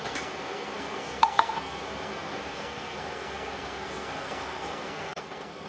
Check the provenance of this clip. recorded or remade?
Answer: remade